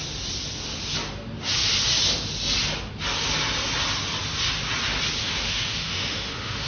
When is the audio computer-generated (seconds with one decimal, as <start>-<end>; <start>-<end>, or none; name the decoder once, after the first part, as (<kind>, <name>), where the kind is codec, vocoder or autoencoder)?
5.2-6.7 (autoencoder, DAC-VAE)